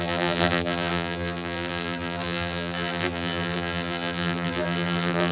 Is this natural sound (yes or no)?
no